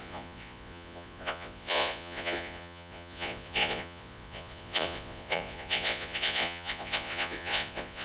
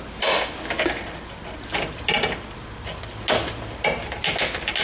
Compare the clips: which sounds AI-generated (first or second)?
first